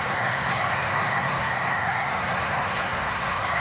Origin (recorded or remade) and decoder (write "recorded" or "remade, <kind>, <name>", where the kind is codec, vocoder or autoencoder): remade, codec, SNAC